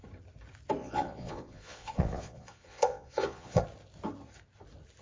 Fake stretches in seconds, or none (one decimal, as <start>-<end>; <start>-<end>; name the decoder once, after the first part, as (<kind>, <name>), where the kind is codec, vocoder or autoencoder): 0.8-3.6 (vocoder, Vocos)